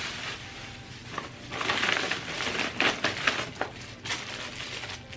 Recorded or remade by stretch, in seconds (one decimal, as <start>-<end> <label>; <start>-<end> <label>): 0.0-5.2 recorded